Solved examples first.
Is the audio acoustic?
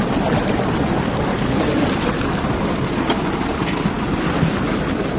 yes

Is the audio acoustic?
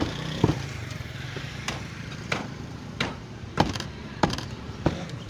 no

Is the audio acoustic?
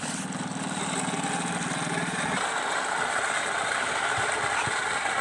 yes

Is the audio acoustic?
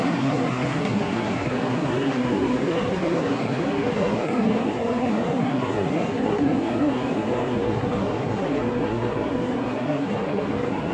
no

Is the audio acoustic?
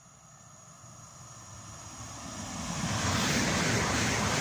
yes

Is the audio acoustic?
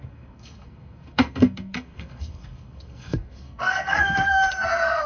no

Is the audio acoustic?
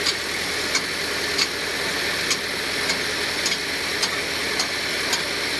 yes